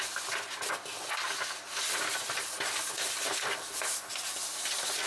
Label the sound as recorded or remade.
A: recorded